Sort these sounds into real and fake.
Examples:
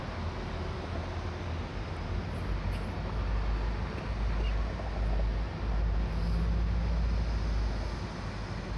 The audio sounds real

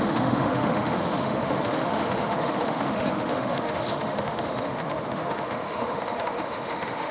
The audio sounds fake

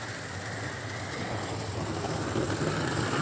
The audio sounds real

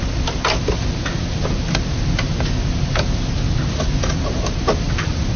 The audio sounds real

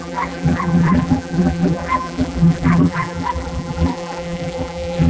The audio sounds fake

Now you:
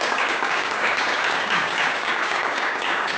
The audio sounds fake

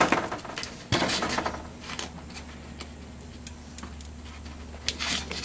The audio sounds real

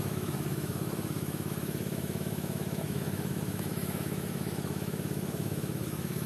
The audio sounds fake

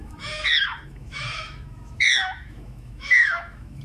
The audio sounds fake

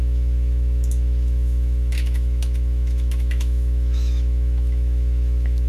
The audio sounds fake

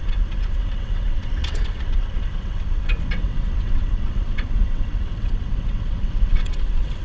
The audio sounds fake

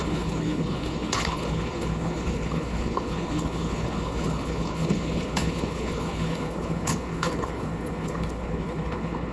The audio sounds fake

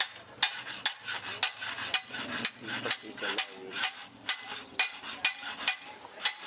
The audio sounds real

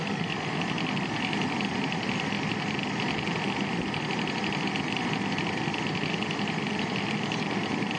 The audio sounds real